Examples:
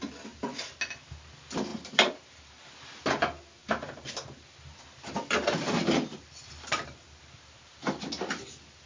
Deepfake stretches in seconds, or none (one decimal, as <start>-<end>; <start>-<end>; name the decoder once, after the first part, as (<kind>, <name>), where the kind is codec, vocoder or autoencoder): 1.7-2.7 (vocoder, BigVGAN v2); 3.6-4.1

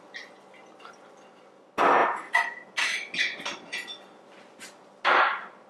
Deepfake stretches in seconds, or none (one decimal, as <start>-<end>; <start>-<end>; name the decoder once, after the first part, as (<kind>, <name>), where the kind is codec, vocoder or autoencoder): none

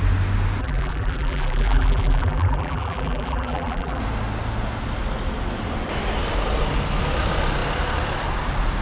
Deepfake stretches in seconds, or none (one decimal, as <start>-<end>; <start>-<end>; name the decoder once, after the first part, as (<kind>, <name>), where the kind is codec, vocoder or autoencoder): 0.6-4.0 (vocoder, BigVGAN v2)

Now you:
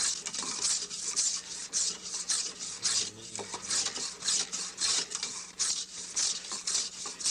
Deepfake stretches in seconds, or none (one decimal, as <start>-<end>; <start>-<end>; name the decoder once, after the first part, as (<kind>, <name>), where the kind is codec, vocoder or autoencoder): 1.6-3.0 (vocoder, BigVGAN v2); 4.7-6.6